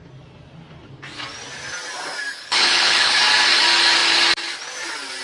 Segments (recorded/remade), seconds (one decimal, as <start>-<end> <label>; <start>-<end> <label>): 0.0-2.3 recorded; 2.3-3.2 remade; 3.2-5.2 recorded